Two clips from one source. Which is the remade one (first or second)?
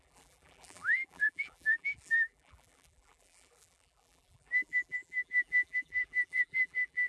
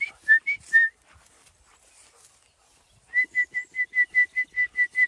first